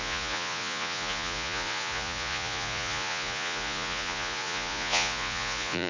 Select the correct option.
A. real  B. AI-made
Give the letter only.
B